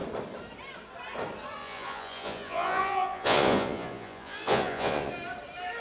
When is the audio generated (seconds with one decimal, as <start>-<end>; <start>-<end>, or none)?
1.6-5.1